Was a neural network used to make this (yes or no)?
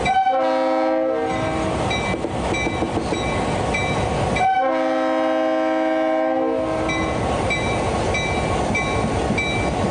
no